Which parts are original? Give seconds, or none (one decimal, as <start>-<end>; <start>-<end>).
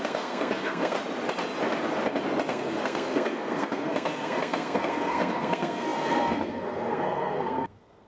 1.0-2.5